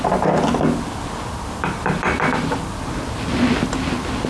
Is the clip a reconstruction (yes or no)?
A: no